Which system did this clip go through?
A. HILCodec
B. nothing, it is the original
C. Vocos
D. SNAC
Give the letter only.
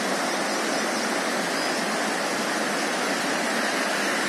B